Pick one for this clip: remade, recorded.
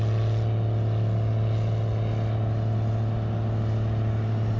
recorded